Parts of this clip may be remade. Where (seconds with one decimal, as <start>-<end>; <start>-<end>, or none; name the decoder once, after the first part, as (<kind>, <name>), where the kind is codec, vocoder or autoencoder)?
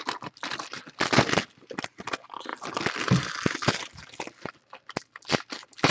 none